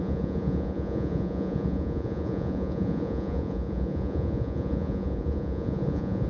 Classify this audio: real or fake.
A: fake